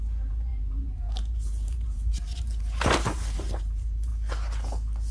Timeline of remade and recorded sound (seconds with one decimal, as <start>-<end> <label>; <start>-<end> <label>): 0.0-4.1 remade; 4.1-5.1 recorded